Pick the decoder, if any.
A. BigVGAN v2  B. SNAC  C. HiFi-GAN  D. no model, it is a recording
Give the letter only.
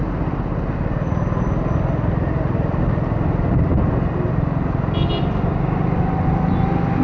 D